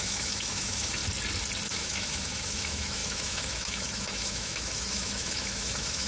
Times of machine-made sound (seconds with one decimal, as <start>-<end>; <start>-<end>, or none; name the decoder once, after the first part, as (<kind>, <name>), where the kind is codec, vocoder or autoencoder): 0.0-1.0 (autoencoder, DAC-VAE); 1.7-6.1